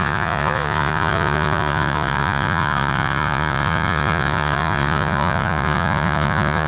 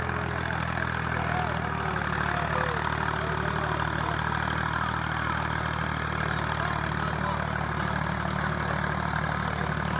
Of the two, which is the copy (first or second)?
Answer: first